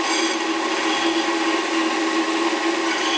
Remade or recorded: recorded